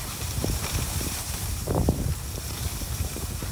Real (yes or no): no